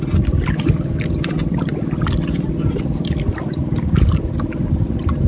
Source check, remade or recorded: recorded